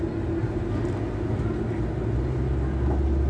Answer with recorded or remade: recorded